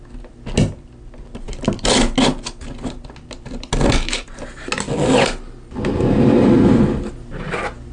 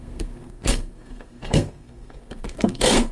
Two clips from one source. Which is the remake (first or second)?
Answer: second